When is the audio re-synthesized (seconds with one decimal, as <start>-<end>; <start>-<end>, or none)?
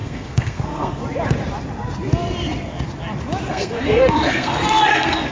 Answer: 0.0-1.0; 3.5-5.3